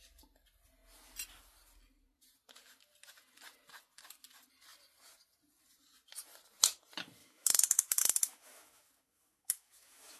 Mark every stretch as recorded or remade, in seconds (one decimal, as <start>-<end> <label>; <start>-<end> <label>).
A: 0.0-7.2 recorded; 7.2-10.2 remade